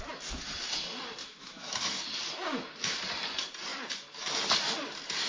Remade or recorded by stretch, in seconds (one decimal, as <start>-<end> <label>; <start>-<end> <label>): 0.0-1.2 recorded; 1.2-2.0 remade; 2.0-5.3 recorded